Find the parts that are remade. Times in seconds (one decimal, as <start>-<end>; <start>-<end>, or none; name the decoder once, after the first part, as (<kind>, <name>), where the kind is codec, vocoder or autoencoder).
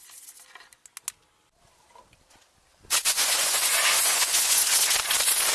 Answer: 3.0-4.8 (vocoder, Vocos)